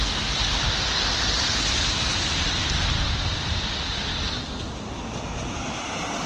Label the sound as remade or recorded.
recorded